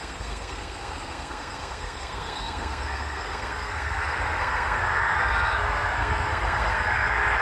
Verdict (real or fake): fake